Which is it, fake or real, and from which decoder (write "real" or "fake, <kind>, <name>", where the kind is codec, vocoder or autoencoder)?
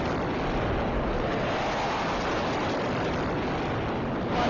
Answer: real